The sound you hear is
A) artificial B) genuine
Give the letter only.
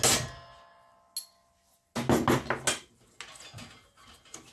B